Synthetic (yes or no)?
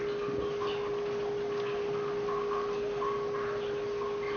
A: no